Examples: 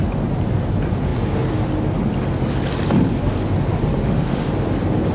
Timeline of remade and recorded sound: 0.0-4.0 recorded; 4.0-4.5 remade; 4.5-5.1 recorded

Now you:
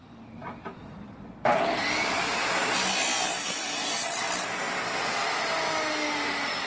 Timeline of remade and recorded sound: 0.0-6.7 recorded

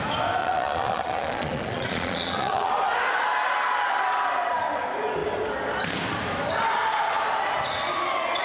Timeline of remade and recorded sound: 0.0-0.4 recorded; 0.4-2.7 remade; 2.7-8.4 recorded

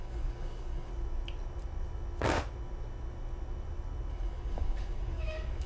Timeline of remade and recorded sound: 0.0-0.9 remade; 0.9-4.1 recorded; 4.1-5.7 remade

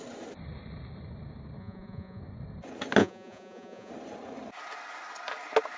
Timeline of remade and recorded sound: 0.0-1.6 recorded; 1.6-2.2 remade; 2.2-3.0 recorded; 3.0-3.9 remade; 3.9-5.8 recorded

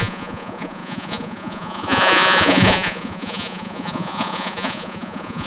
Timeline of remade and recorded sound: 0.0-5.5 remade

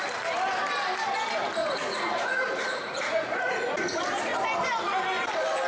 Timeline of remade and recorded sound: 0.0-1.6 recorded; 1.6-3.7 remade; 3.7-5.7 recorded